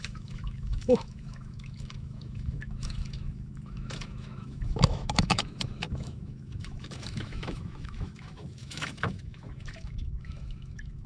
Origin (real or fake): fake